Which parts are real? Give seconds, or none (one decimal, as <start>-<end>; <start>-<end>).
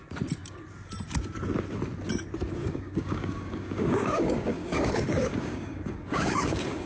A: 0.0-2.6